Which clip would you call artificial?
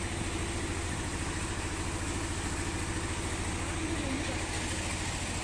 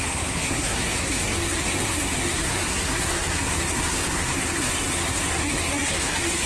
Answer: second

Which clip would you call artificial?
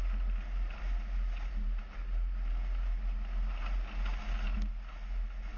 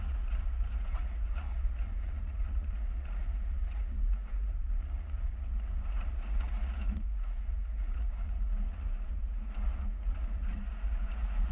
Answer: second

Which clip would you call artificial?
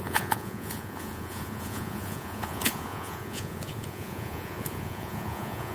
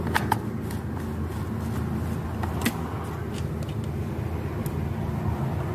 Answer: first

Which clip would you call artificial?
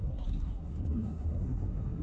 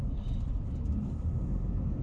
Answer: first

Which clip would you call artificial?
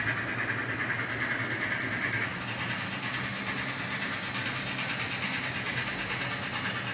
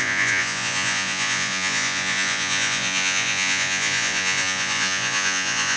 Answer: second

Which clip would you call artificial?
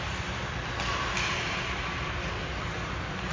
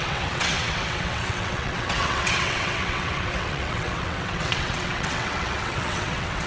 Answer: second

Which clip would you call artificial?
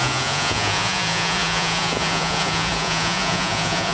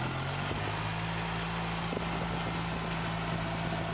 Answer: first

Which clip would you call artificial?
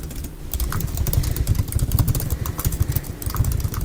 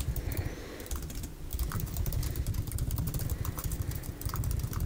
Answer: second